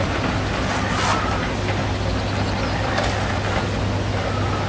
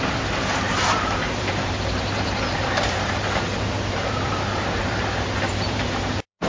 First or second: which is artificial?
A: second